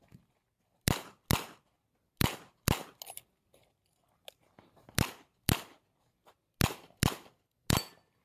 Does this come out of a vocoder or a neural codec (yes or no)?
no